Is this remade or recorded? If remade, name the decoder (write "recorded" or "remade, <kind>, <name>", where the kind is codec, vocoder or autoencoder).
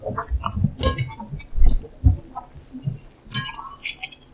recorded